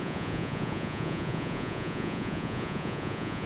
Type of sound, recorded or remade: remade